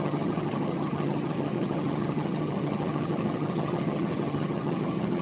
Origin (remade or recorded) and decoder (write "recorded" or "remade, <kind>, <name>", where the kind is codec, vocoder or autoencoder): remade, vocoder, HiFi-GAN